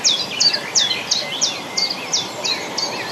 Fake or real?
real